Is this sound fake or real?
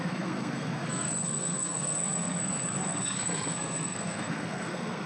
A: fake